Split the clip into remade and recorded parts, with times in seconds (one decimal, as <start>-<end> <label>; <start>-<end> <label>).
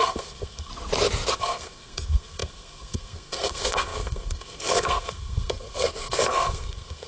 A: 0.0-0.7 remade; 0.7-1.3 recorded; 1.3-7.1 remade